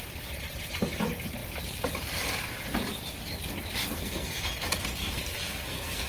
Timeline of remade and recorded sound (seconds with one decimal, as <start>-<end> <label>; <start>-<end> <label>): 0.0-3.8 recorded; 3.8-4.4 remade; 4.4-5.0 recorded; 5.0-6.1 remade